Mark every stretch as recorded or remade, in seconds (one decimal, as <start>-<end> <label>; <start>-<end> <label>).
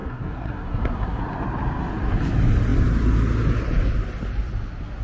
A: 0.0-1.2 remade; 1.2-5.0 recorded